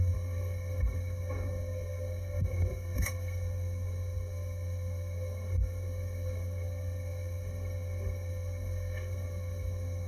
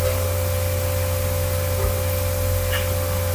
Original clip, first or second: second